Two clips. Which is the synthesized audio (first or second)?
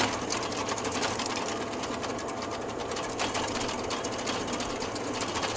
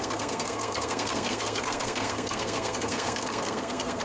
second